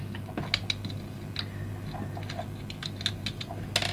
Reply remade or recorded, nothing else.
recorded